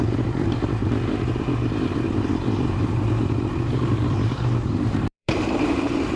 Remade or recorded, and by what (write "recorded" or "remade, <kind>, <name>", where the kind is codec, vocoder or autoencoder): remade, vocoder, BigVGAN v2